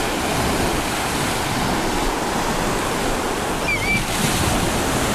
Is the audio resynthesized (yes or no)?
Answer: no